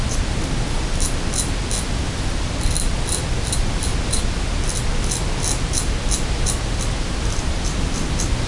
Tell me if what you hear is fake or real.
real